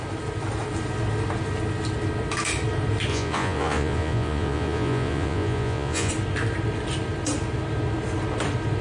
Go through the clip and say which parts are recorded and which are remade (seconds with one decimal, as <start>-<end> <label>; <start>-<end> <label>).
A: 0.0-3.1 recorded; 3.1-6.1 remade; 6.1-8.8 recorded